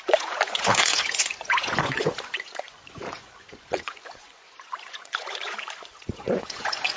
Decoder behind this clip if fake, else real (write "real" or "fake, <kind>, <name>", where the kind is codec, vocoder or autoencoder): fake, vocoder, Vocos